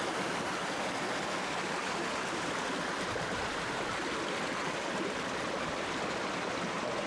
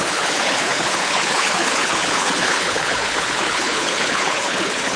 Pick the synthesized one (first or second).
second